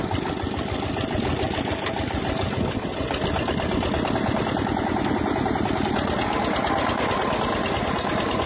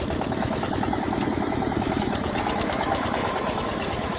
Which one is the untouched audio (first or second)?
first